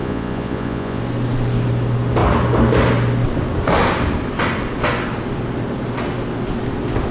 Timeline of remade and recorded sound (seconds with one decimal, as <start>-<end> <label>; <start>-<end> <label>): 0.0-1.0 remade; 1.0-7.1 recorded